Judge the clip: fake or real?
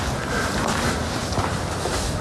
real